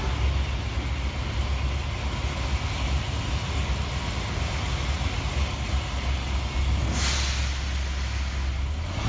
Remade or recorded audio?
recorded